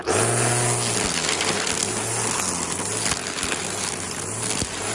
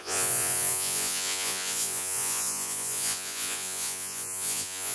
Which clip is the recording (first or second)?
first